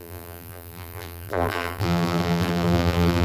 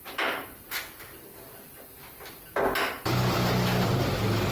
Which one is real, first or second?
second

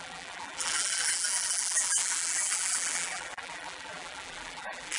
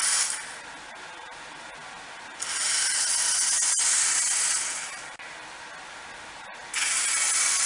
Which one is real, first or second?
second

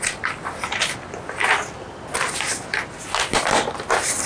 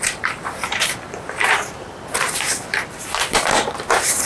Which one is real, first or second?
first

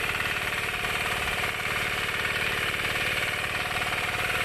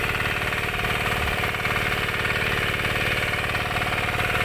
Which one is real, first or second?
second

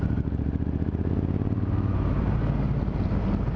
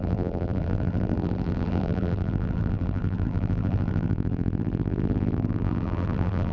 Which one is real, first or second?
first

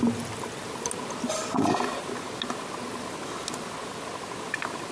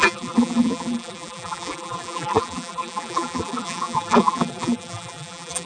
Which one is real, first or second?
first